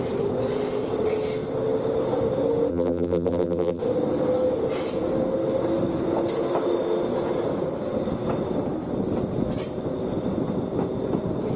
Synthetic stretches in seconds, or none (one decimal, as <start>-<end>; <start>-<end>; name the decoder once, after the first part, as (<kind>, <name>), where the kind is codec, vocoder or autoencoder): 2.7-3.8 (vocoder, BigVGAN v2)